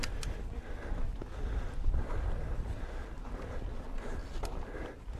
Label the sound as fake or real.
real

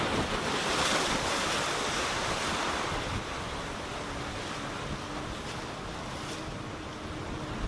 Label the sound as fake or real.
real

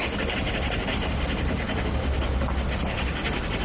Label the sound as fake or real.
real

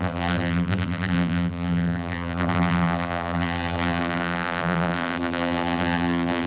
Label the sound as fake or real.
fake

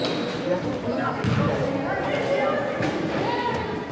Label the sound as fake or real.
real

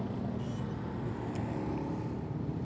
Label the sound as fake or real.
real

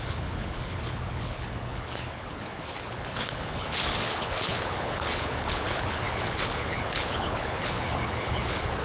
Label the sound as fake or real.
fake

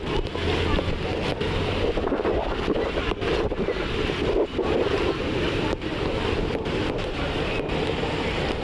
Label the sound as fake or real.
real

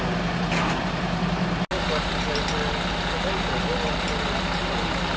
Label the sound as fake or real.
real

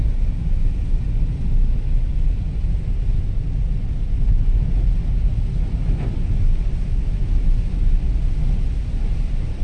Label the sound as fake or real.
real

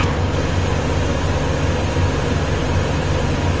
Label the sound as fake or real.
real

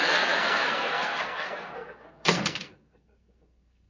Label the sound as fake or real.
fake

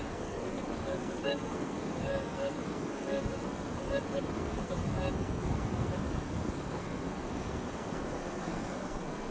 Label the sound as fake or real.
fake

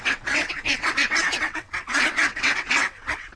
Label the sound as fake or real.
fake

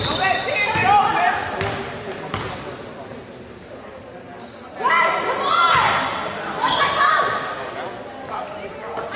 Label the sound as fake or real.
real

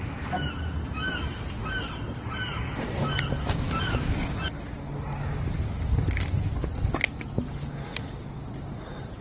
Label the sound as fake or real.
real